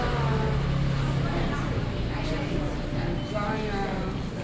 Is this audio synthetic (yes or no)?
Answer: no